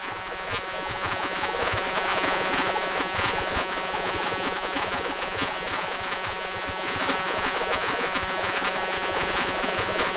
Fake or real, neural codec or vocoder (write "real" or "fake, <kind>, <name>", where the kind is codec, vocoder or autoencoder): fake, vocoder, Vocos